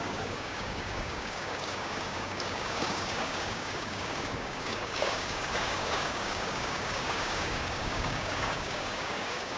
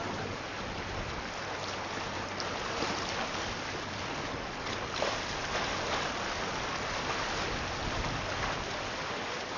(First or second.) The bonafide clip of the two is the second